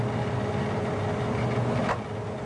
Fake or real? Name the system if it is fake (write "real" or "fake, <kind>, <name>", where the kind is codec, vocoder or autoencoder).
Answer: real